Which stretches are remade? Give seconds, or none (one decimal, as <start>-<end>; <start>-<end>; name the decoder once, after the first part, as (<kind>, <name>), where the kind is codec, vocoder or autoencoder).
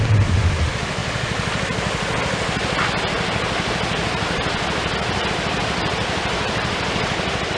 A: 0.0-1.0 (vocoder, BigVGAN v2); 5.3-7.6